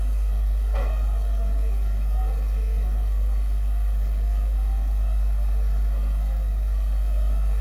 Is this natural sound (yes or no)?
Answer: no